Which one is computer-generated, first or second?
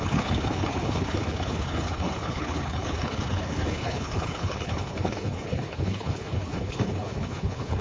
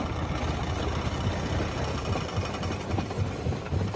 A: first